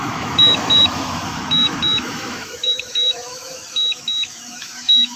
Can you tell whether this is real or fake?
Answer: fake